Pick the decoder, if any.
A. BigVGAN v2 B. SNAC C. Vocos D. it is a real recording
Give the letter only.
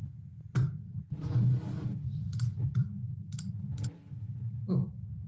D